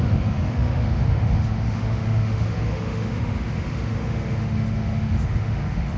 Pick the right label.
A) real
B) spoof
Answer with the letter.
B